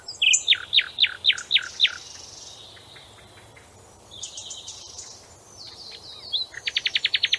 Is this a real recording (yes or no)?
yes